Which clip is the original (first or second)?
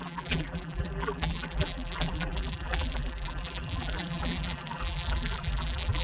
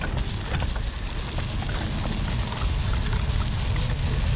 second